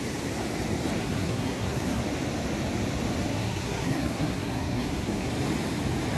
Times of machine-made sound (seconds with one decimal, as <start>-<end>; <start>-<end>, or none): 1.0-2.0; 3.3-5.3